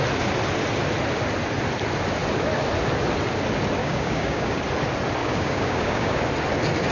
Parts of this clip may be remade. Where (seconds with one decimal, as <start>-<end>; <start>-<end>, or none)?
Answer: 3.8-4.6; 5.2-6.2